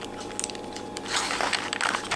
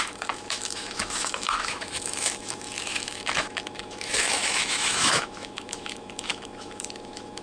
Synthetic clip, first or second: second